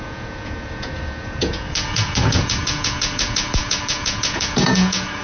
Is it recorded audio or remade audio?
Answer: remade